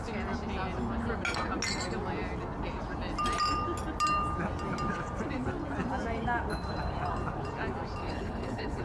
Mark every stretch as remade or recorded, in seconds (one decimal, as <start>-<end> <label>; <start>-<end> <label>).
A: 0.0-8.0 recorded; 8.0-8.8 remade